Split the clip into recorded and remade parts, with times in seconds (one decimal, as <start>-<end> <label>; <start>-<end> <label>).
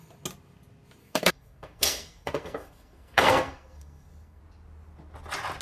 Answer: 0.0-1.0 recorded; 1.0-4.4 remade; 4.4-5.6 recorded